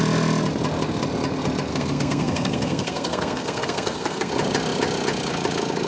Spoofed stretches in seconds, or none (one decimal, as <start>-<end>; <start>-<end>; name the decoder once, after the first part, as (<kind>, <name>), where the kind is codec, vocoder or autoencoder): 1.7-4.3 (codec, SNAC)